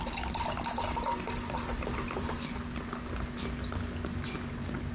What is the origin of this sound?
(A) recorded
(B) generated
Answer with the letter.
A